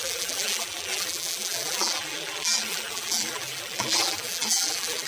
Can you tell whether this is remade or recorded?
remade